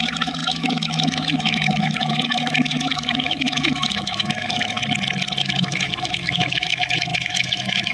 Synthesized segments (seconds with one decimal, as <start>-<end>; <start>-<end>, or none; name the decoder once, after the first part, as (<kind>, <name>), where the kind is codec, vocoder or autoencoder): 0.0-4.8 (autoencoder, DAC-VAE); 5.4-7.9